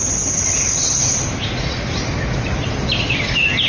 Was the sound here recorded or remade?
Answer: recorded